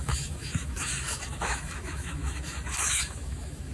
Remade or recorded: remade